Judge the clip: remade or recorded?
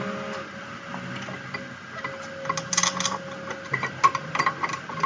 recorded